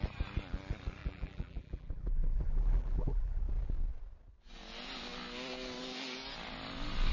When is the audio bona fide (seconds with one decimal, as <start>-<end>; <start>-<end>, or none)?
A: 0.0-1.0; 3.4-7.1